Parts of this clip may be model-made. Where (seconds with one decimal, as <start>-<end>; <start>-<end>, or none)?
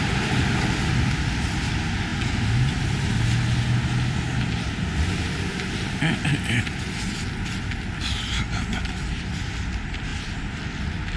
none